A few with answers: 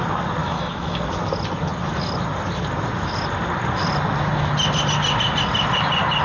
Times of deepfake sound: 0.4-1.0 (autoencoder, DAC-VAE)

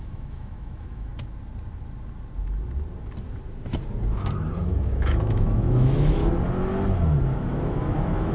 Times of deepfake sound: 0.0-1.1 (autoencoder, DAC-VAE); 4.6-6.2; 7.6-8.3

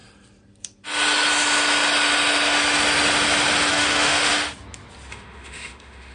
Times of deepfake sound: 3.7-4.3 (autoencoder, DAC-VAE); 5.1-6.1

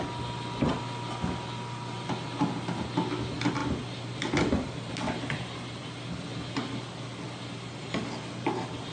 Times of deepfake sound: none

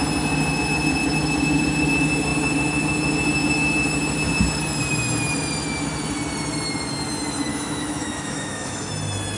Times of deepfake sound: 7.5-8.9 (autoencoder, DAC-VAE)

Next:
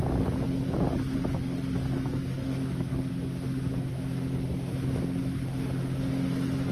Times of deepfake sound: 2.1-2.9 (autoencoder, DAC-VAE)